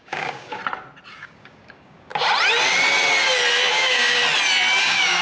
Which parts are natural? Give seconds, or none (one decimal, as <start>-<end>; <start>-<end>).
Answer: 0.6-1.2; 2.1-3.7; 4.2-4.8